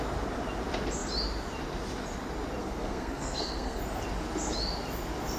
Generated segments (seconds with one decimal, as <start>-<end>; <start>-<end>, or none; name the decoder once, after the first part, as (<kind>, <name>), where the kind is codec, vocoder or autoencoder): 2.6-3.8 (codec, SNAC)